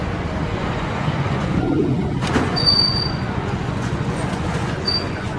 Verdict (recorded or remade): remade